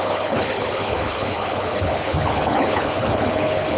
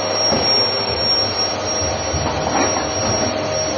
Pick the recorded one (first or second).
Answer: second